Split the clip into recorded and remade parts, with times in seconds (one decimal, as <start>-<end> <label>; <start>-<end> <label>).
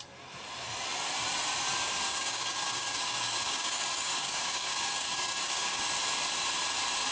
0.0-2.1 recorded; 2.1-5.8 remade; 5.8-7.1 recorded